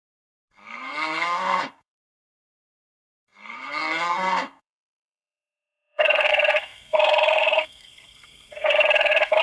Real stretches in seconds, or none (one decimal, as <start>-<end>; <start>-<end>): none